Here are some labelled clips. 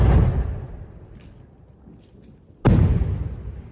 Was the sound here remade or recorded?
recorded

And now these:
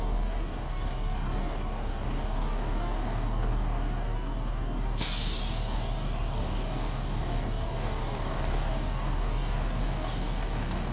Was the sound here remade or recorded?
remade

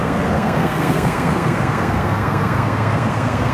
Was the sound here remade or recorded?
remade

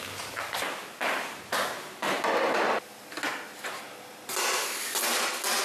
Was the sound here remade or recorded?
recorded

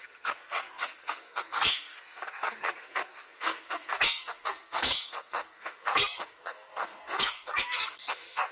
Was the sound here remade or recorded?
remade